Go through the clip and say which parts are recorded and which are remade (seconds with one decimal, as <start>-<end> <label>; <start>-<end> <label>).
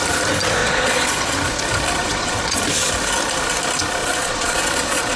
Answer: 0.0-0.6 recorded; 0.6-1.6 remade; 1.6-2.0 recorded; 2.0-2.6 remade; 2.6-4.0 recorded; 4.0-5.2 remade